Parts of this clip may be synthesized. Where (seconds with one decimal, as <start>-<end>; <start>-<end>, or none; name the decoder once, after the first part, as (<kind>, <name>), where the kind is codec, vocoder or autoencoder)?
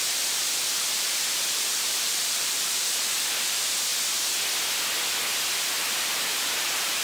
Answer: 0.0-3.9 (vocoder, BigVGAN v2); 5.8-7.0